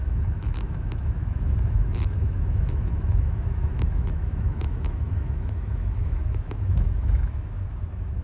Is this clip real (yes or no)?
no